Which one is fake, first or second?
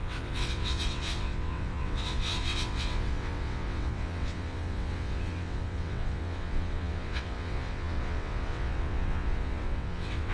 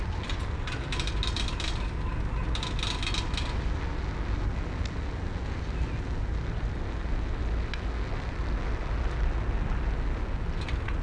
first